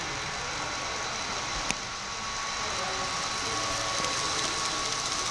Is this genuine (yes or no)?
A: yes